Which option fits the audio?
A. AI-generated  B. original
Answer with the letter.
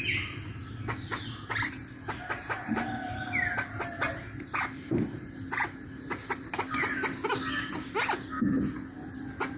B